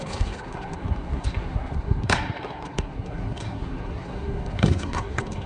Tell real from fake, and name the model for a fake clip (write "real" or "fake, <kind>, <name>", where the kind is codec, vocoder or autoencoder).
fake, codec, SNAC